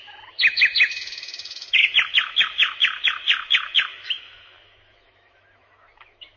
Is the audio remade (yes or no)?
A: yes